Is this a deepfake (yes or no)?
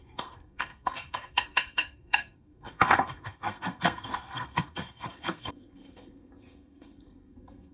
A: yes